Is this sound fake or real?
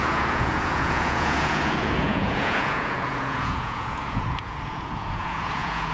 fake